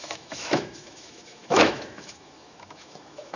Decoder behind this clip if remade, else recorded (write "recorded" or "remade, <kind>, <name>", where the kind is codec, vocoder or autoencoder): remade, autoencoder, DAC-VAE